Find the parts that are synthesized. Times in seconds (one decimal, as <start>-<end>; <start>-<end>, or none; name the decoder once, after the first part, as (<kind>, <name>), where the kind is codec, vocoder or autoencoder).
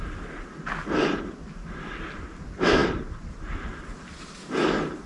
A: none